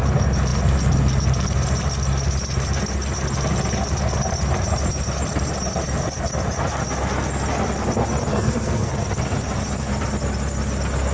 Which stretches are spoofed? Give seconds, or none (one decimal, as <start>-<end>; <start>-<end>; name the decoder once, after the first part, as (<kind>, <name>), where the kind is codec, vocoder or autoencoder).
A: 8.3-8.9 (codec, SNAC)